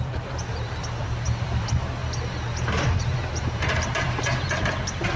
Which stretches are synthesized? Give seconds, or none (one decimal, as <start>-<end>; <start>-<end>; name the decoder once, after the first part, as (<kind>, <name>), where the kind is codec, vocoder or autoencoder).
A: 0.0-2.0 (vocoder, BigVGAN v2); 3.0-5.2